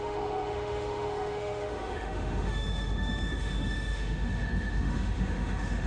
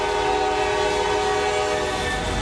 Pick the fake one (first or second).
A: first